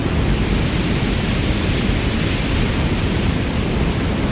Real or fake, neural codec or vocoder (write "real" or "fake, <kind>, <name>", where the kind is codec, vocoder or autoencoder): real